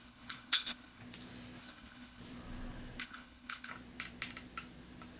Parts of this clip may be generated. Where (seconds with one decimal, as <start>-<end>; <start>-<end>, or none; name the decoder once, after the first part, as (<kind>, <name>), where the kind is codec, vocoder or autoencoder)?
0.0-1.0 (codec, HILCodec); 1.6-2.2; 3.0-3.7